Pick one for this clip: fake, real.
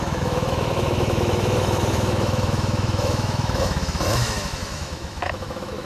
fake